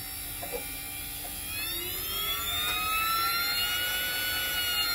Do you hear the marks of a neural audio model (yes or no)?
no